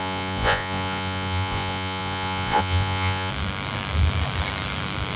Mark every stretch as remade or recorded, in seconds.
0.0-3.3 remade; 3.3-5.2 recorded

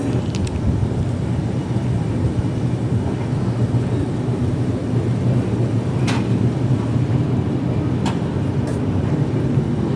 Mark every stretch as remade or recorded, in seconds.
0.0-10.0 recorded

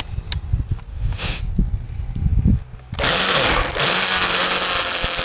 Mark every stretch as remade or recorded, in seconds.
0.0-0.9 recorded; 0.9-1.4 remade; 1.4-5.2 recorded

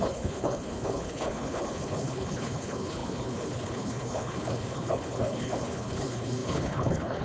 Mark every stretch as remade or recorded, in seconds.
0.0-7.2 remade

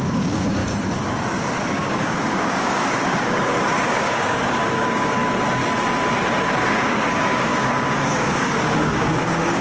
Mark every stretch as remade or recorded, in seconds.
0.0-0.6 remade; 0.6-1.6 recorded; 1.6-5.2 remade; 5.2-6.7 recorded; 6.7-9.6 remade

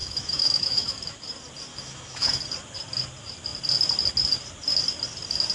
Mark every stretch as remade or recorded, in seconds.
0.0-1.2 remade; 1.2-1.7 recorded; 1.7-2.4 remade; 2.4-5.5 recorded

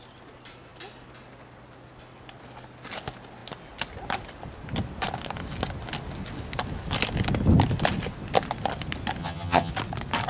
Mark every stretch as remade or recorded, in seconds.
0.0-9.2 recorded; 9.2-9.7 remade; 9.7-10.3 recorded